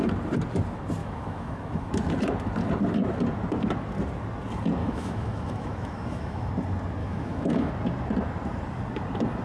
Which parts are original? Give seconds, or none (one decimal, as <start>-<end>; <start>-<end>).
0.0-1.0; 1.9-4.8; 6.5-7.0; 7.7-9.4